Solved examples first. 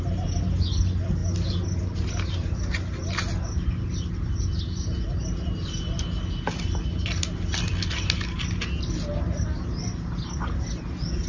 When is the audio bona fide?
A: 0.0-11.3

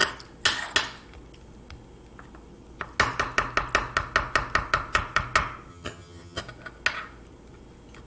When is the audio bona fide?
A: 0.0-5.7; 6.4-8.1

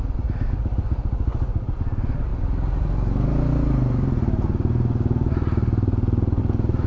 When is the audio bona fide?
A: 0.0-6.9

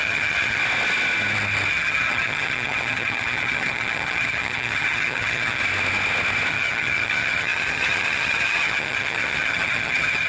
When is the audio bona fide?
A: 0.6-1.7; 5.6-6.5

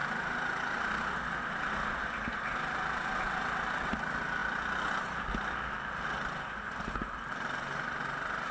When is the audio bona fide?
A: 0.0-8.5